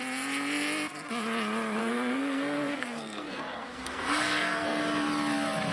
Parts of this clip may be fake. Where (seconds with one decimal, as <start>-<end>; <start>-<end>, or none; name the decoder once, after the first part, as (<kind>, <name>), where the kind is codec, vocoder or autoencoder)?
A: 1.8-4.8 (codec, SNAC)